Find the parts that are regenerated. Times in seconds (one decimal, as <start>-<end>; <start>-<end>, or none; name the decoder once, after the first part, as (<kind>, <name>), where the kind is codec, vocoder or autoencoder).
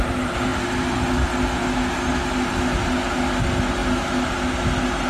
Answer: none